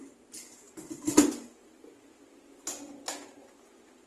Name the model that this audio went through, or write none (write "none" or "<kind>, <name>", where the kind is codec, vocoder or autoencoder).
none